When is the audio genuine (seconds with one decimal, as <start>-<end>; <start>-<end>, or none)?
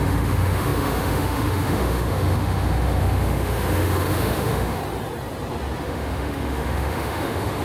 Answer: 4.8-5.8